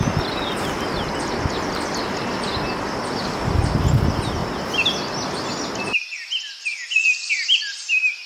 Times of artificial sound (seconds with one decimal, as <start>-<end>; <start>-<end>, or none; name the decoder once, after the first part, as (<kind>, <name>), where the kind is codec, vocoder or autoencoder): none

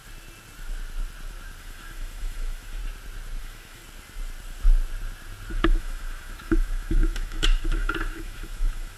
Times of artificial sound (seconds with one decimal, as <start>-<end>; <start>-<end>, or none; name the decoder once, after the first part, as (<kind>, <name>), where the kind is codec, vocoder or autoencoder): 1.6-2.8 (autoencoder, DAC-VAE); 3.4-3.8; 5.5-9.0

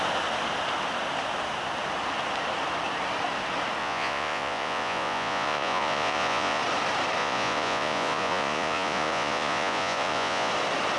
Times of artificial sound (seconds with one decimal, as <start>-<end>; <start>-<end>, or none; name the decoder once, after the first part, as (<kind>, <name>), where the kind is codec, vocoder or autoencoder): 3.8-6.6 (vocoder, Vocos); 7.2-10.5